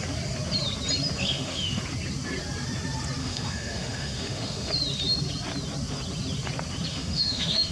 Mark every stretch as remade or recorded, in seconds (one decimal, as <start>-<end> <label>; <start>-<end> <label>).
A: 0.0-1.2 recorded; 1.2-1.8 remade; 1.8-3.2 recorded; 3.2-4.7 remade; 4.7-6.9 recorded; 6.9-7.7 remade

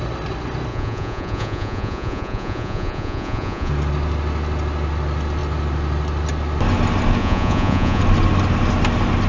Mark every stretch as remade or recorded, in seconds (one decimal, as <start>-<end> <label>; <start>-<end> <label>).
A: 0.0-0.7 recorded; 0.7-3.7 remade; 3.7-7.2 recorded; 7.2-8.0 remade; 8.0-9.3 recorded